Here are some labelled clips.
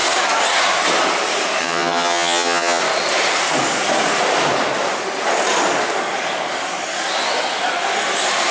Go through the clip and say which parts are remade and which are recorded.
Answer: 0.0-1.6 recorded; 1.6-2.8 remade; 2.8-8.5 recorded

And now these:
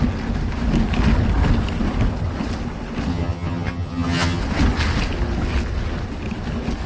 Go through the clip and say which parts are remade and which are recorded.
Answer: 0.0-3.1 recorded; 3.1-4.4 remade; 4.4-6.9 recorded

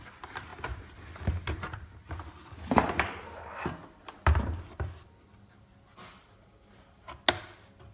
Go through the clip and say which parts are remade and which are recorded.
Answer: 0.0-7.9 recorded

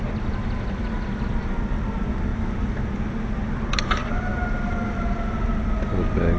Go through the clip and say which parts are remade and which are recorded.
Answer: 0.0-6.4 recorded

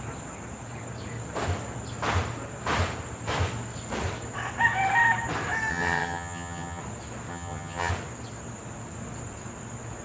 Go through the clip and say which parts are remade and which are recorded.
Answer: 0.0-5.7 recorded; 5.7-6.8 remade; 6.8-7.3 recorded; 7.3-7.9 remade; 7.9-10.0 recorded

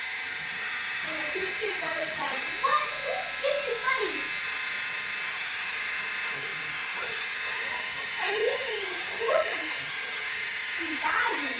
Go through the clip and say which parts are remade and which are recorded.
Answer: 0.0-2.5 remade; 2.5-4.4 recorded; 4.4-11.6 remade

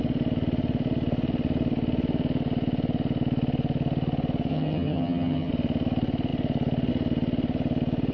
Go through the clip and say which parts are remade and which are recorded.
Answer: 0.0-4.5 recorded; 4.5-5.5 remade; 5.5-8.1 recorded